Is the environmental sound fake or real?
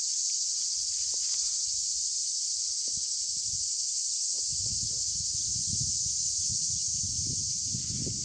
real